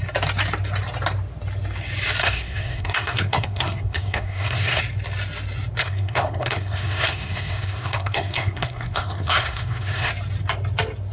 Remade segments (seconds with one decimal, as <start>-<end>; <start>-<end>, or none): 2.2-4.8; 5.8-10.1